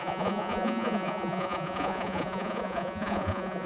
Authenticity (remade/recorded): remade